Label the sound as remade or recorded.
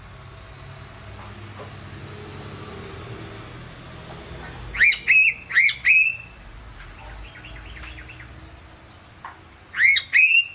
recorded